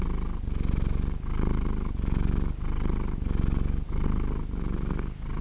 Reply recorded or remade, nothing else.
recorded